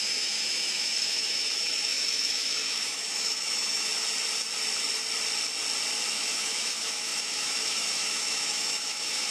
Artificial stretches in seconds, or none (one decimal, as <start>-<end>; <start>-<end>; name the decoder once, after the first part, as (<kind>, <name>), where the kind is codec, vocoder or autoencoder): 0.0-3.9 (autoencoder, DAC-VAE); 6.1-9.3